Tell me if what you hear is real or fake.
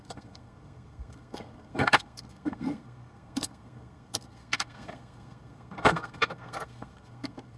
fake